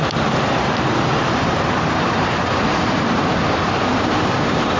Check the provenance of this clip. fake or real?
fake